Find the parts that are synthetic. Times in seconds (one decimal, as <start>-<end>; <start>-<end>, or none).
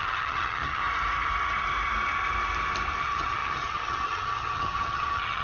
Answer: 0.0-0.8; 3.0-5.4